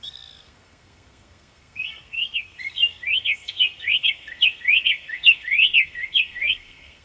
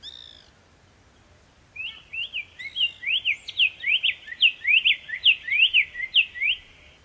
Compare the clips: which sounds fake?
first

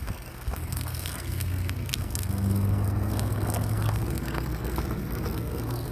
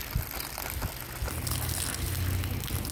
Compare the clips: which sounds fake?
first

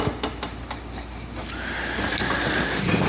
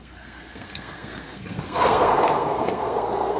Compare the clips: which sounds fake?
second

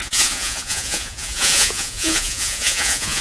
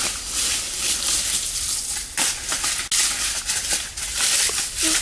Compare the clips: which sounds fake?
first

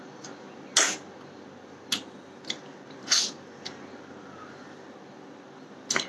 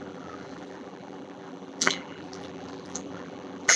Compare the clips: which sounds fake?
second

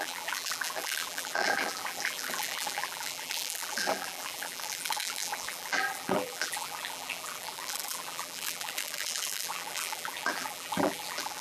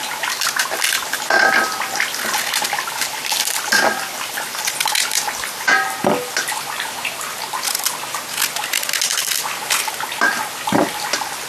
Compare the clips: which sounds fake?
first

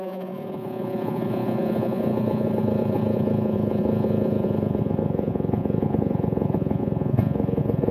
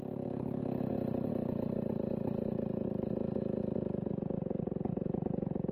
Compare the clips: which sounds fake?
first